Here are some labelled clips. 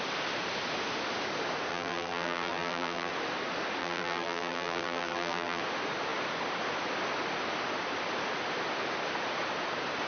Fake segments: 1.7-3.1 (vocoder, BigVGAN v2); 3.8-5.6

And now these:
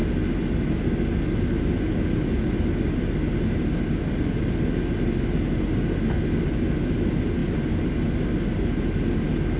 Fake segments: none

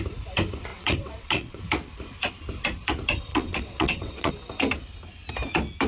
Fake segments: 0.7-1.6 (vocoder, WaveNeXt); 3.3-4.3

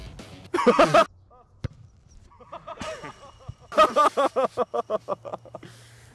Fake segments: none

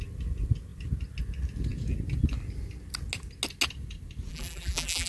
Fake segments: 4.3-5.1 (vocoder, BigVGAN v2)

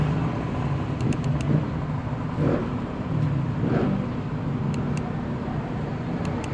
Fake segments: 2.0-5.9 (vocoder, BigVGAN v2)

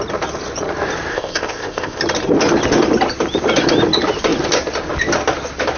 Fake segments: 1.1-2.0 (codec, ZipCodec)